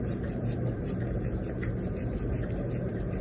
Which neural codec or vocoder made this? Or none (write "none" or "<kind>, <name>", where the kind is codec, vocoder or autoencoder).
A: vocoder, BigVGAN v2